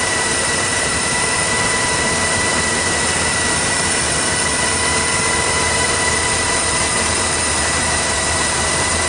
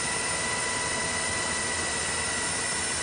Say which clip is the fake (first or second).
first